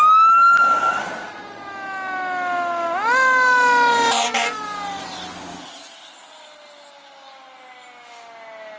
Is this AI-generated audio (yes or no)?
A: no